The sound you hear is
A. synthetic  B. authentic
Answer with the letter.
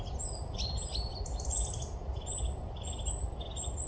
B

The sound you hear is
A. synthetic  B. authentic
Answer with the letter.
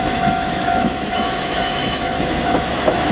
A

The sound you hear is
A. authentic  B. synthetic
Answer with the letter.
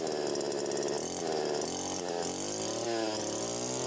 A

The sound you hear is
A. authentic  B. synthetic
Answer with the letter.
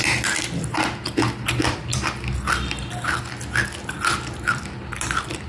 A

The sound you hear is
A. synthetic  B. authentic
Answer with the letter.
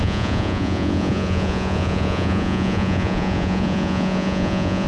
A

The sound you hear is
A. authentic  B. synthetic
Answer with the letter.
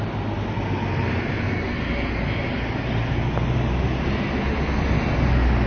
A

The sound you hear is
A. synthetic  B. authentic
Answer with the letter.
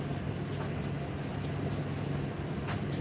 B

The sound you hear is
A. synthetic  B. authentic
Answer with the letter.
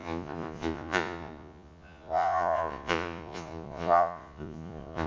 A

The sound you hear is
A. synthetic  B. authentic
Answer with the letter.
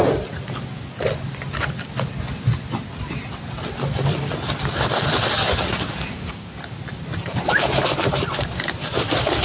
B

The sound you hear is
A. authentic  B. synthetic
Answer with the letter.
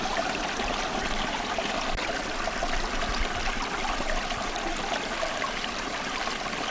A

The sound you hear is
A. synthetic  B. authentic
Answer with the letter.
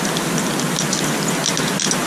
B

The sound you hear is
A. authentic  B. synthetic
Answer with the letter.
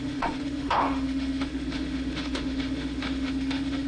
B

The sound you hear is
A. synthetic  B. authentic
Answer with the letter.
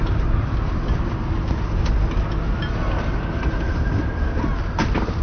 B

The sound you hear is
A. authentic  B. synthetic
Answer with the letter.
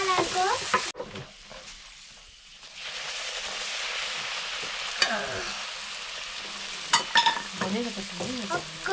A